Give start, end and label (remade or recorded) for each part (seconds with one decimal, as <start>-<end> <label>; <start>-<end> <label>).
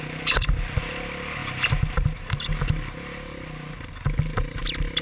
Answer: 0.0-5.0 recorded